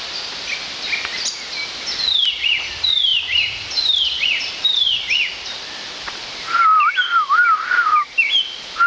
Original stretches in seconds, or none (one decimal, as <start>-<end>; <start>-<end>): 0.0-3.1; 8.3-8.9